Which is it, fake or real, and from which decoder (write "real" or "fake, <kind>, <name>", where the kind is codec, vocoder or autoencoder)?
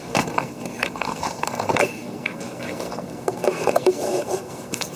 fake, codec, SNAC